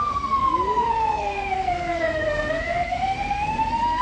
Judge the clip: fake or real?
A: fake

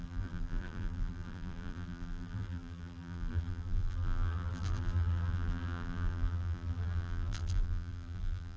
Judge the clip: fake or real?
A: fake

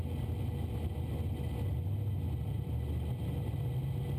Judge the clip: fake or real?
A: real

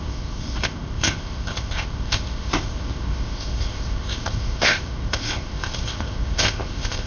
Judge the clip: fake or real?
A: fake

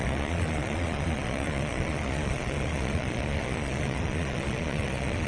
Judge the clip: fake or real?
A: fake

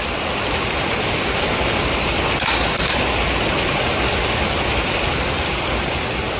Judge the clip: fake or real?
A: real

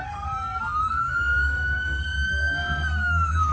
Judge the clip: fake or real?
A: fake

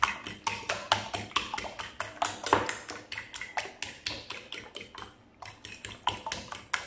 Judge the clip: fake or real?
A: real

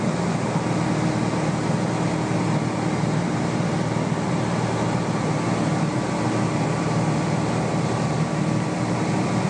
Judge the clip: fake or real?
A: real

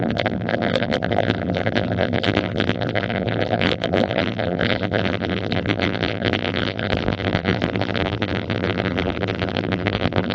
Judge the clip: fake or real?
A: fake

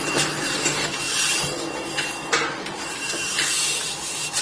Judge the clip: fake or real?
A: real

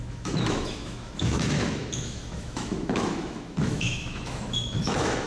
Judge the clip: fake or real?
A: fake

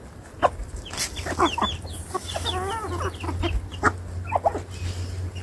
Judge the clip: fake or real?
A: real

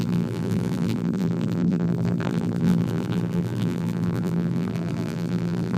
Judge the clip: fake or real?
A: fake